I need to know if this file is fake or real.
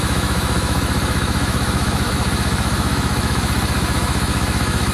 fake